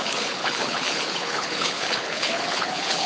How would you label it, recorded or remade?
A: remade